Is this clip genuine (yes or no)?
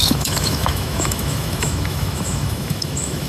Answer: no